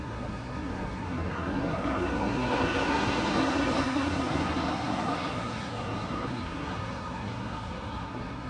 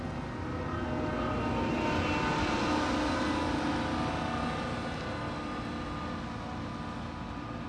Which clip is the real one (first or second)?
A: second